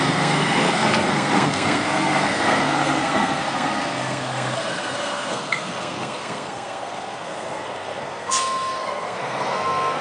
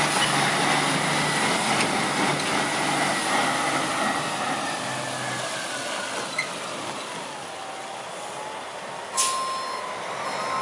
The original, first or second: second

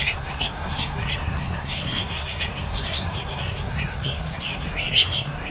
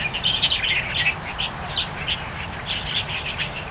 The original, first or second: second